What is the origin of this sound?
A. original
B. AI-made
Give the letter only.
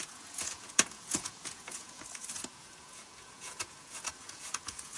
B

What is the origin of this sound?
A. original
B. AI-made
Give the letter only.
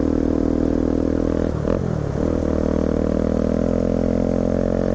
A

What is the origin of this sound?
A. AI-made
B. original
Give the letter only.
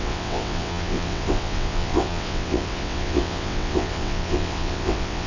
A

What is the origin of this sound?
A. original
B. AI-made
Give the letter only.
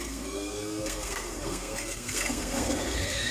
B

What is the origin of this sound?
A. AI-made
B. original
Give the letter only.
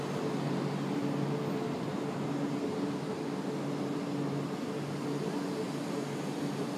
B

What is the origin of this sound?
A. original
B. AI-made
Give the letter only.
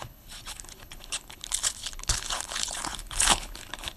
B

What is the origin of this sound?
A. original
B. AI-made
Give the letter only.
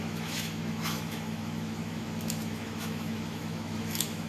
B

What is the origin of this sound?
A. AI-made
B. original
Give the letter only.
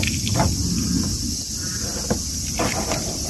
B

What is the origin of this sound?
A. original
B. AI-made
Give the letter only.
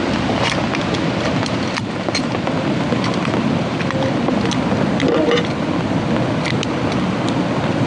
A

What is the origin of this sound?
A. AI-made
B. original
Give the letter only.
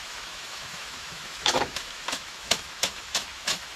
A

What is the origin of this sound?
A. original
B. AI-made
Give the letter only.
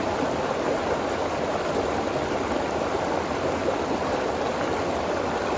A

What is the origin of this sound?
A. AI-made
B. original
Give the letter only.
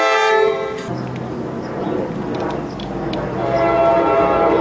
B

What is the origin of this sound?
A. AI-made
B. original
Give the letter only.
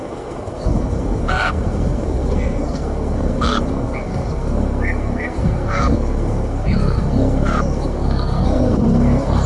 A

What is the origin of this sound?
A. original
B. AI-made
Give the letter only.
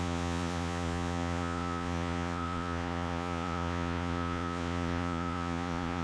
B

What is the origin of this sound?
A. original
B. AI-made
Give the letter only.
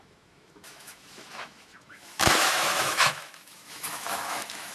B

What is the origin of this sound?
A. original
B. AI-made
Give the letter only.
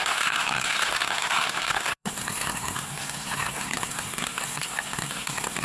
B